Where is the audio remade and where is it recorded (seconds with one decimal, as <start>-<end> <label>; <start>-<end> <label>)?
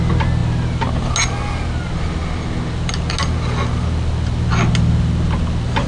0.0-5.9 recorded